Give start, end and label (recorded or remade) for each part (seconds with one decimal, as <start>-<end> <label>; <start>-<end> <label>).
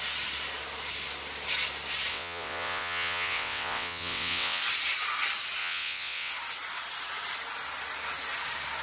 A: 0.0-2.1 recorded; 2.1-4.6 remade; 4.6-5.6 recorded; 5.6-6.3 remade; 6.3-8.8 recorded